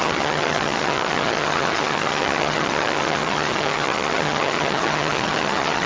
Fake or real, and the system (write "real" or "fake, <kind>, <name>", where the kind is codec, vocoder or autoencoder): fake, vocoder, HiFi-GAN